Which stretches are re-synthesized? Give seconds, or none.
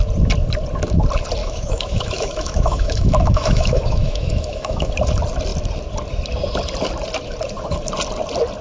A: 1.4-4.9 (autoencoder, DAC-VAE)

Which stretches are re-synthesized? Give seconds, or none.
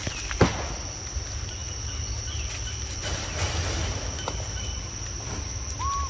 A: none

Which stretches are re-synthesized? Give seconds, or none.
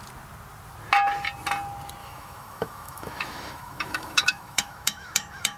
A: 2.0-5.6 (autoencoder, DAC-VAE)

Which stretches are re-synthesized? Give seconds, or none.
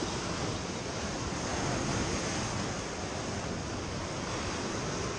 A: none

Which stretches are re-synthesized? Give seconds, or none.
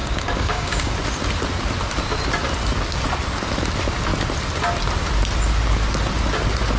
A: 0.0-0.9 (codec, DAC)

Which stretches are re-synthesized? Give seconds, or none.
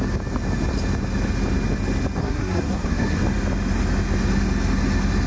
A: 2.2-3.2 (codec, SNAC)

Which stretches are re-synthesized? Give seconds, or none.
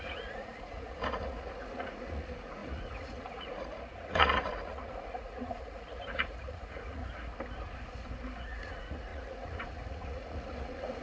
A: 0.0-7.0 (vocoder, Vocos); 8.4-11.0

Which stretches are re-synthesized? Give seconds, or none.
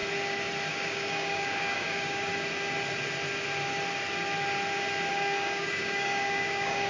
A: 0.7-2.3 (codec, DAC); 5.1-6.9